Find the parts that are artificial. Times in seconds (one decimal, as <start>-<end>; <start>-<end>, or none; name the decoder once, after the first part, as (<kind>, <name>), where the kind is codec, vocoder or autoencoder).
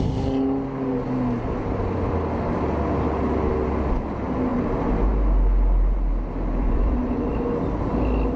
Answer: 6.6-7.3 (vocoder, Vocos)